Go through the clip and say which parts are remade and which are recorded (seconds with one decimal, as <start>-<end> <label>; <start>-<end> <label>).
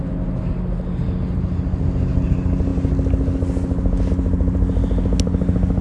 0.0-5.8 recorded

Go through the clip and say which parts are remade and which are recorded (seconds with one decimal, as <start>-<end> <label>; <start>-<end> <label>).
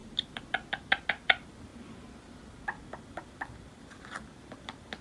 0.0-5.0 recorded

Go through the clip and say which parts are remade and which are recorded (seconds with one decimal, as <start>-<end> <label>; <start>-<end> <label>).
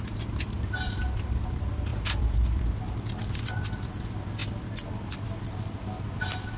0.0-6.6 recorded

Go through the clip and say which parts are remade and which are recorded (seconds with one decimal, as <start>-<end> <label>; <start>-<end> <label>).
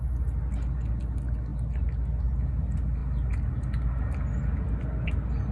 0.0-5.5 recorded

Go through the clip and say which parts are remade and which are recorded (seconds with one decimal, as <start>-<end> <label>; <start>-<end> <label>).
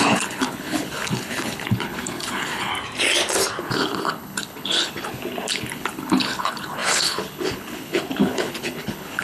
0.0-2.7 remade; 2.7-3.6 recorded; 3.6-9.2 remade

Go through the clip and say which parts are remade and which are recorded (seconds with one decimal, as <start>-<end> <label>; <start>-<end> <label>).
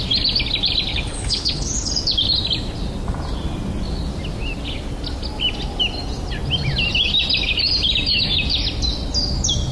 0.0-0.9 recorded; 0.9-1.9 remade; 1.9-9.7 recorded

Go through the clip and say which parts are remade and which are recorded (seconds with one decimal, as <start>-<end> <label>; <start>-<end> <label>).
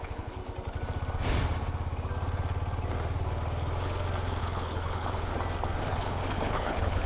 0.0-0.4 remade; 0.4-4.4 recorded; 4.4-5.3 remade; 5.3-5.9 recorded; 5.9-7.1 remade